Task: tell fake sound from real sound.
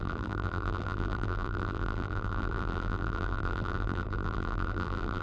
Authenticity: fake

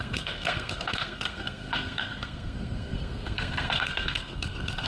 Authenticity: fake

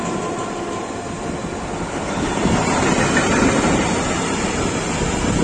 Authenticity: real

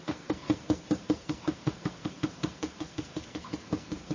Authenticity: fake